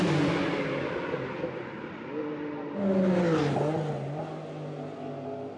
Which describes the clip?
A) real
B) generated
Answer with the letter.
A